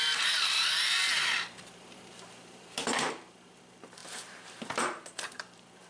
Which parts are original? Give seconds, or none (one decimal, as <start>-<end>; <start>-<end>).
none